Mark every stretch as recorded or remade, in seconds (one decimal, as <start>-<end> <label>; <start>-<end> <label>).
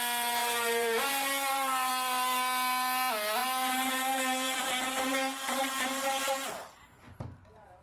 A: 0.0-0.4 recorded; 0.4-1.9 remade; 1.9-3.4 recorded; 3.4-6.5 remade; 6.5-7.8 recorded